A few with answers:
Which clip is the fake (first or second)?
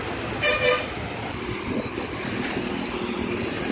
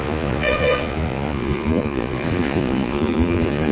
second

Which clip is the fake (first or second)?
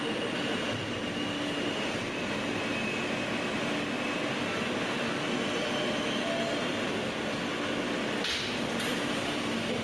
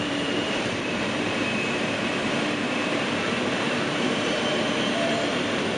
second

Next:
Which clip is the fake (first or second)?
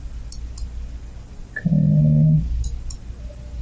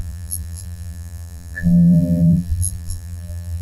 second